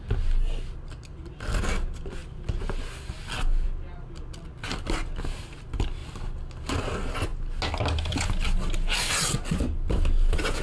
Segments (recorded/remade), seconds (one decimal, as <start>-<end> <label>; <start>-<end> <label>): 0.0-10.6 recorded

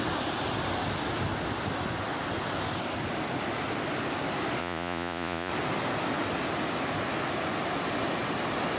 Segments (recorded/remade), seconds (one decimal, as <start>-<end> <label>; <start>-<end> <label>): 0.0-4.6 recorded; 4.6-5.5 remade; 5.5-8.8 recorded

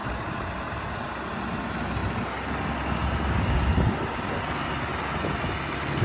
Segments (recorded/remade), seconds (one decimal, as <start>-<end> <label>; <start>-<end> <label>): 0.0-6.0 recorded

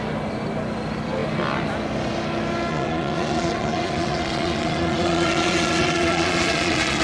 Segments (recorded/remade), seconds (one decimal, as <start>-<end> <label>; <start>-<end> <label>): 0.0-2.7 recorded; 2.7-7.0 remade